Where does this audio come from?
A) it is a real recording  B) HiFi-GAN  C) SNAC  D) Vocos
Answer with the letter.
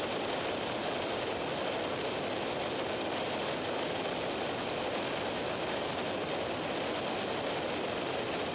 A